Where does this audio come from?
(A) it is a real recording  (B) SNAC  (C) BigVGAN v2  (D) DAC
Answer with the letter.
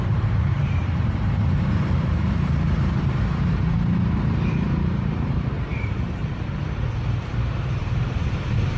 C